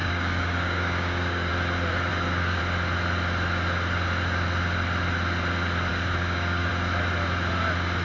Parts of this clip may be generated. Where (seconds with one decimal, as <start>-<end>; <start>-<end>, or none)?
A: 0.0-1.5; 2.1-2.6; 5.9-6.7